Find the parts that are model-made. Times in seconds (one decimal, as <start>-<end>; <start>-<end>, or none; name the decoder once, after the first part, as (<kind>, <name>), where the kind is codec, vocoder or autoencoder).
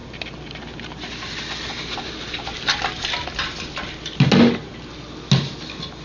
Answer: none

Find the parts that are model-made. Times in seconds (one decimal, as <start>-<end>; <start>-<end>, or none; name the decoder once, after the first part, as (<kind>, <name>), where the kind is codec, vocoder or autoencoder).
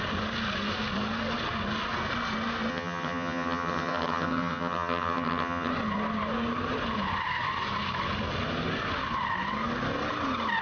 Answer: 2.7-5.7 (vocoder, HiFi-GAN)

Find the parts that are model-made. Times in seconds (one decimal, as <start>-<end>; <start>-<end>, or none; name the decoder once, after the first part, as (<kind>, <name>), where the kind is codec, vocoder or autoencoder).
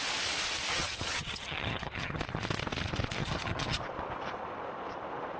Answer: 0.7-2.2 (vocoder, HiFi-GAN); 3.2-3.8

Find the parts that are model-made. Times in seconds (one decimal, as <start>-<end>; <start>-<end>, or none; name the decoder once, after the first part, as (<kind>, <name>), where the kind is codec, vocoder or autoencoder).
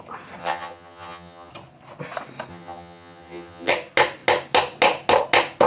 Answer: 0.4-1.5 (vocoder, HiFi-GAN); 2.5-3.7